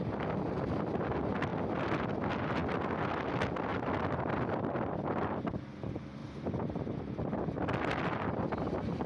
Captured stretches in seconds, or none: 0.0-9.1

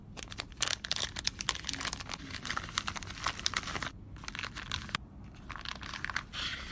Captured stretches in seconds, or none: 0.0-6.7